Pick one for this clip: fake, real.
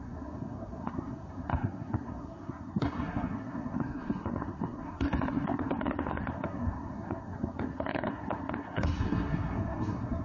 fake